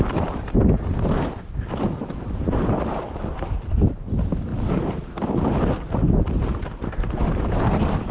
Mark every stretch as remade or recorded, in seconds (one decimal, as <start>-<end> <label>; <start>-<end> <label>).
0.0-8.1 recorded